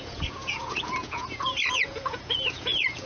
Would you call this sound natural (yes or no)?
no